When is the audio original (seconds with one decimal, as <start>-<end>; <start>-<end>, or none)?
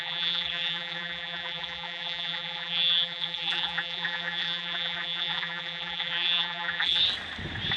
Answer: 7.0-7.8